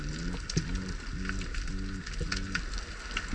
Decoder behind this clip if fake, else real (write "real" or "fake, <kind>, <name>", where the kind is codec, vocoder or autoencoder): real